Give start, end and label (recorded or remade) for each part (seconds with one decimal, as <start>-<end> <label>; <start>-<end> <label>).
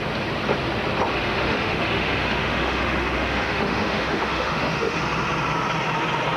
0.0-1.2 recorded; 1.2-5.0 remade; 5.0-6.4 recorded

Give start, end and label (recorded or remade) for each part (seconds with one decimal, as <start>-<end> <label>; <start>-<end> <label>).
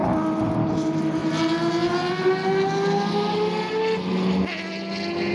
0.0-5.3 recorded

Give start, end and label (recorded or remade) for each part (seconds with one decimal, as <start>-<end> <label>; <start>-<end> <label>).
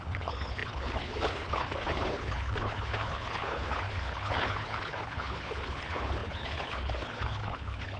0.0-8.0 remade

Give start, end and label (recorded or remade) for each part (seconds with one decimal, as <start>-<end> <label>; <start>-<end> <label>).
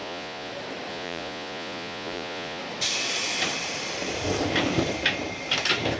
0.0-0.5 remade; 0.5-0.9 recorded; 0.9-2.6 remade; 2.6-6.0 recorded